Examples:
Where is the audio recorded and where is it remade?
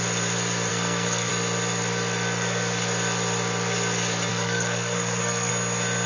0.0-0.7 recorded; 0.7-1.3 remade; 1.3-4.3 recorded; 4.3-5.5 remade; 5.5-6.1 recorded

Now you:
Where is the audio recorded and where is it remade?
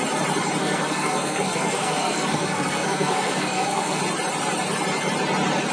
0.0-0.6 recorded; 0.6-4.0 remade; 4.0-5.7 recorded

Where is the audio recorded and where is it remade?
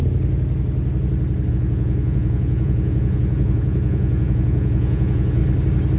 0.0-1.5 recorded; 1.5-5.4 remade; 5.4-6.0 recorded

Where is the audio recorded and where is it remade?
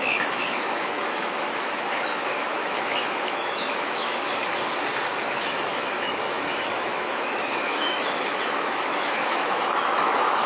0.0-4.4 remade; 4.4-5.3 recorded; 5.3-10.5 remade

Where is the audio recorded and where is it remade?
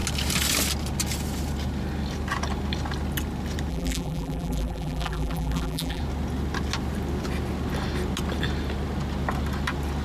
0.0-3.7 recorded; 3.7-6.0 remade; 6.0-10.0 recorded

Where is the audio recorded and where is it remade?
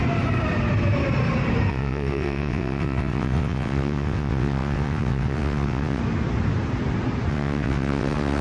0.0-1.7 recorded; 1.7-6.0 remade; 6.0-7.3 recorded; 7.3-8.4 remade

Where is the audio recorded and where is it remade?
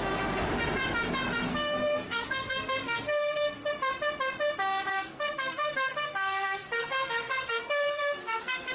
0.0-1.5 recorded; 1.5-3.7 remade; 3.7-4.9 recorded; 4.9-8.7 remade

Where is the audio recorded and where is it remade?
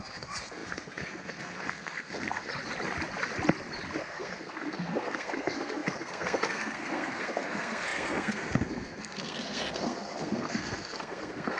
0.0-2.5 remade; 2.5-4.0 recorded; 4.0-11.6 remade